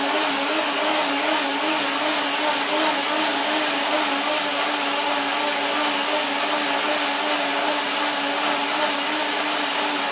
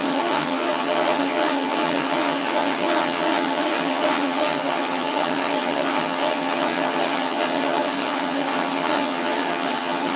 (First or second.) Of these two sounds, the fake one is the second